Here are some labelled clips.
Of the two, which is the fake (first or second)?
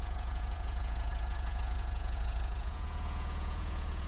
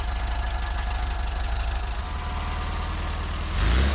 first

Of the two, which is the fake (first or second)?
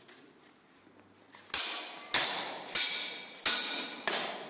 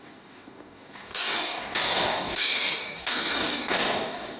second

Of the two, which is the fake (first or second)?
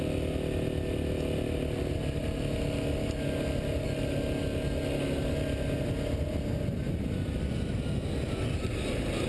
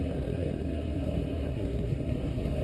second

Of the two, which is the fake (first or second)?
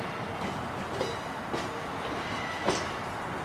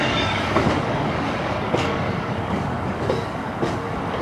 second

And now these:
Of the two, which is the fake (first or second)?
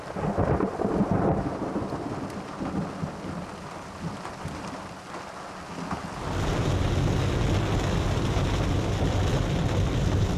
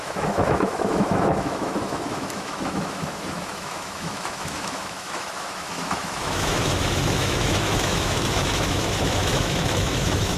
second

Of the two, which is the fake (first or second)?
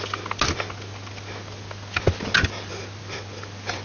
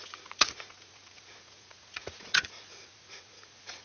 second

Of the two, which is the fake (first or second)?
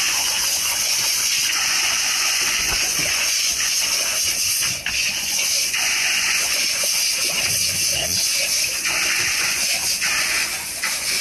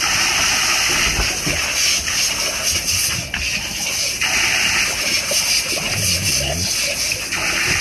first